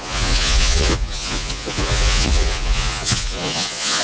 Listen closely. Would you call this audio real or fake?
fake